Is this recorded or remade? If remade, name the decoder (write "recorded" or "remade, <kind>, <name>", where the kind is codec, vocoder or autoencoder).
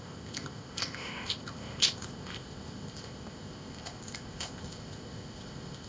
remade, codec, ZipCodec